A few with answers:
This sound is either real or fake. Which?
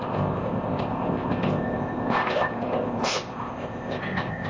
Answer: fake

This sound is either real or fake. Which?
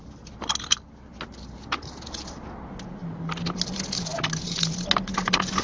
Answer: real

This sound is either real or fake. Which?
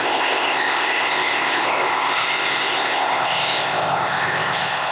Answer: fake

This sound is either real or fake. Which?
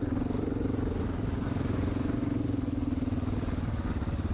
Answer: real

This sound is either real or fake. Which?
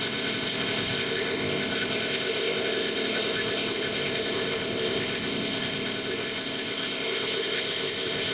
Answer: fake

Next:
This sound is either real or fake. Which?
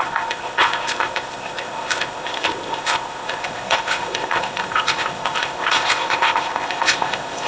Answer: fake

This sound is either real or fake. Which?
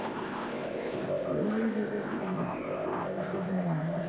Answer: fake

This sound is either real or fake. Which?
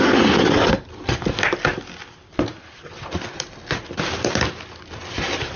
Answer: real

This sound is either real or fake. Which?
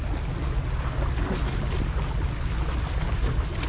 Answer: real